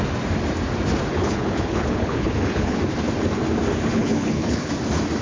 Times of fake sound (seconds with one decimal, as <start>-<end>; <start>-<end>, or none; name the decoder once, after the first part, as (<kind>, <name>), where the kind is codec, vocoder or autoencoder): 1.1-2.8 (codec, HILCodec); 3.9-4.7